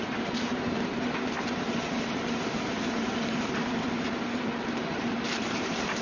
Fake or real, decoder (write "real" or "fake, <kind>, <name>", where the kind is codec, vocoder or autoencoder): fake, vocoder, BigVGAN v2